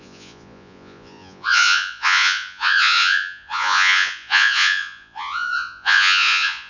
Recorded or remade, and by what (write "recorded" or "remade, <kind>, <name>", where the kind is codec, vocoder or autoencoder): remade, vocoder, Vocos